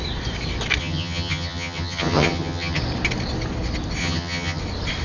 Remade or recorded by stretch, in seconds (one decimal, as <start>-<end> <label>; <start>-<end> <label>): 0.0-0.8 recorded; 0.8-2.8 remade; 2.8-4.0 recorded; 4.0-4.6 remade; 4.6-5.0 recorded